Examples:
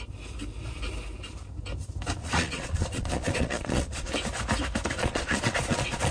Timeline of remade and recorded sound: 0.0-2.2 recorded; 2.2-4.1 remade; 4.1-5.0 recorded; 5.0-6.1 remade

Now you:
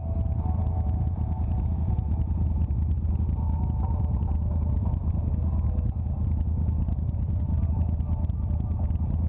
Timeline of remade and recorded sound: 0.0-0.6 recorded; 0.6-2.1 remade; 2.1-9.3 recorded

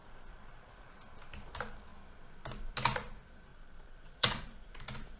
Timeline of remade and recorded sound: 0.0-0.9 remade; 0.9-3.5 recorded; 3.5-4.7 remade; 4.7-5.2 recorded

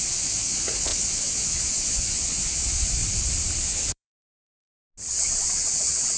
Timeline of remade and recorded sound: 0.0-3.0 remade; 3.0-3.6 recorded; 3.6-4.7 remade; 4.7-5.2 recorded; 5.2-6.2 remade

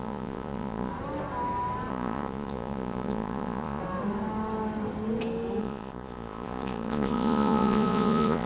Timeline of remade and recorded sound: 0.0-0.9 remade; 0.9-1.9 recorded; 1.9-3.8 remade; 3.8-5.6 recorded; 5.6-8.5 remade

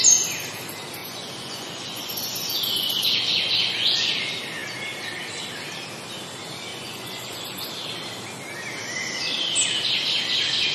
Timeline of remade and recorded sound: 0.0-1.0 recorded; 1.0-4.1 remade; 4.1-6.7 recorded; 6.7-7.7 remade; 7.7-10.7 recorded

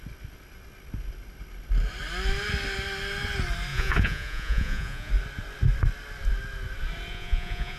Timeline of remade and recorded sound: 0.0-3.7 recorded; 3.7-5.1 remade; 5.1-7.1 recorded; 7.1-7.8 remade